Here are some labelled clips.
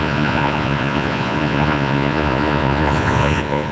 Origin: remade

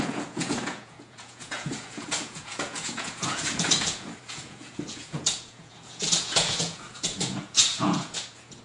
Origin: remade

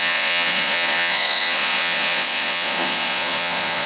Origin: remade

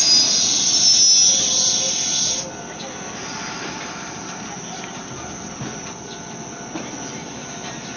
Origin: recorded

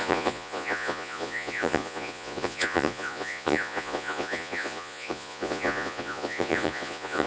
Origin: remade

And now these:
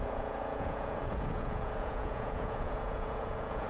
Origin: remade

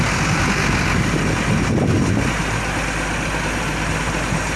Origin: recorded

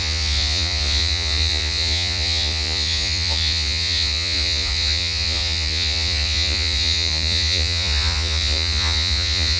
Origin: remade